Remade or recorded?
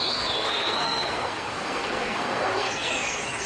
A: remade